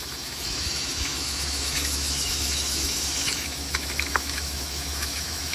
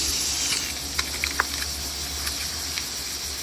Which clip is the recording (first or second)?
second